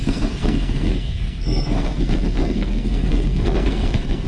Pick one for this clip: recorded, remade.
remade